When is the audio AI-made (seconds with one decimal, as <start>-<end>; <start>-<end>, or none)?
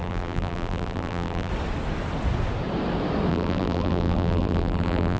0.0-1.5; 3.3-5.2